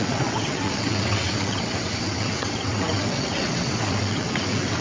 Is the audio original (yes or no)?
no